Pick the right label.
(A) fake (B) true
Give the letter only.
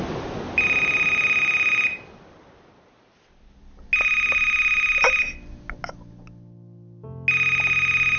B